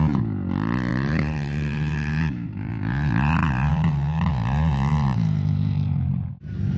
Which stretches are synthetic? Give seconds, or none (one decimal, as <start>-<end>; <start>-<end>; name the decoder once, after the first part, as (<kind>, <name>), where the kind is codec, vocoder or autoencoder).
0.9-2.7 (vocoder, BigVGAN v2); 3.7-4.3; 4.9-6.3